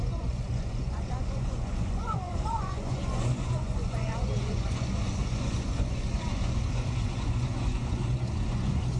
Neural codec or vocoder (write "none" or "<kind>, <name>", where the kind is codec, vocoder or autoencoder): vocoder, Vocos